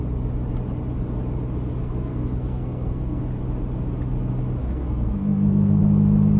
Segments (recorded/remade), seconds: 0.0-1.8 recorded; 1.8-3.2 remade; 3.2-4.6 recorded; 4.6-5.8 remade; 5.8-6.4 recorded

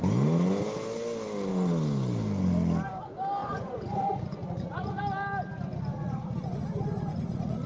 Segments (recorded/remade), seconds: 0.0-3.4 recorded; 3.4-5.0 remade; 5.0-5.9 recorded; 5.9-7.7 remade